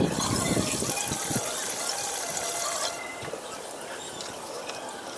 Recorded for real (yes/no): yes